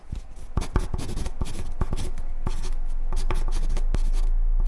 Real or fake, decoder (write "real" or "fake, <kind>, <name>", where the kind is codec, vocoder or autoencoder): real